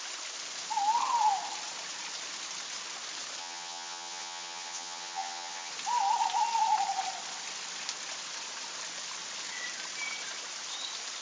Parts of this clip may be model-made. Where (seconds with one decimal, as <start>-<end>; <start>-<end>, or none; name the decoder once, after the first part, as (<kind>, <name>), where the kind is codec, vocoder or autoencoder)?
3.4-5.7 (vocoder, HiFi-GAN)